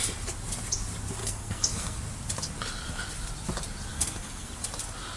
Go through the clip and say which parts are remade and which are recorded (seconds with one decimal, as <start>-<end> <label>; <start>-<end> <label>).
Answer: 0.0-1.2 recorded; 1.2-2.0 remade; 2.0-3.9 recorded; 3.9-4.5 remade; 4.5-5.2 recorded